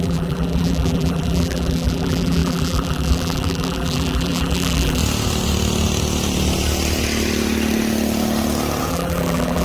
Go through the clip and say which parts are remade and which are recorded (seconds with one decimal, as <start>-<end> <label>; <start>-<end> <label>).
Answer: 0.0-5.0 remade; 5.0-8.9 recorded; 8.9-9.6 remade